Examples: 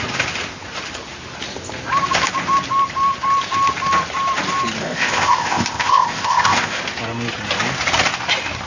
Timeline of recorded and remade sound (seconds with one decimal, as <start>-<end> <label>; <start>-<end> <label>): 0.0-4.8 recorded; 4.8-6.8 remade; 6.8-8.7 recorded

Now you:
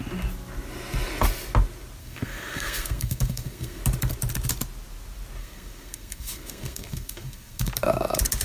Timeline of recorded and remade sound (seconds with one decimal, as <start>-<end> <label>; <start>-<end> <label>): 0.0-2.0 recorded; 2.0-3.8 remade; 3.8-5.4 recorded; 5.4-7.7 remade; 7.7-8.4 recorded

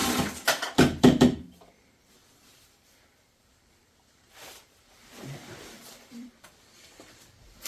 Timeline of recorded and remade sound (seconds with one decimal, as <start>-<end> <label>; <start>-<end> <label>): 0.0-7.7 remade